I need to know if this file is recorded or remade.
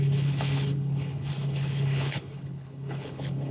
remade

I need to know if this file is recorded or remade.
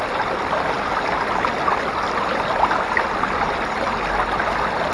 recorded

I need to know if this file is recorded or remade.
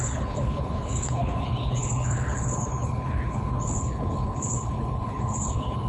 remade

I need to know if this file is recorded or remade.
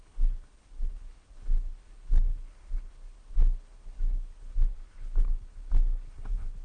remade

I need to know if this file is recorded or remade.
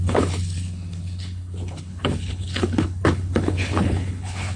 remade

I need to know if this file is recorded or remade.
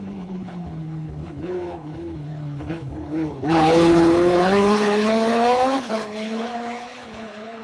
remade